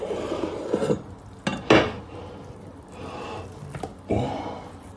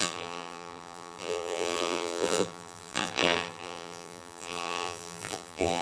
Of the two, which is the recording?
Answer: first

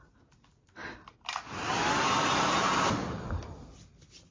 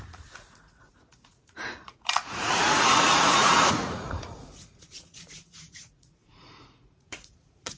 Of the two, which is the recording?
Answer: first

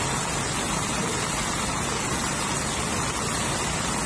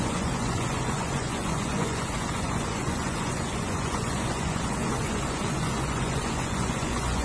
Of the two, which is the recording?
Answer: first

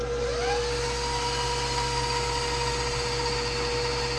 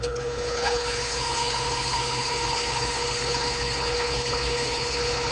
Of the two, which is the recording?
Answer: first